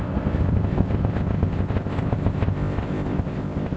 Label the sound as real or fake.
fake